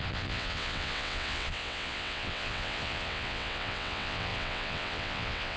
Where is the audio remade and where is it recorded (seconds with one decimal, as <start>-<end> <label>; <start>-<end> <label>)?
0.0-5.6 remade